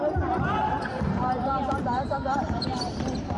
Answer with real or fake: fake